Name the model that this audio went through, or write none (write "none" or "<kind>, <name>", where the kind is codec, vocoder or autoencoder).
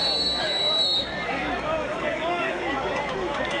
codec, DAC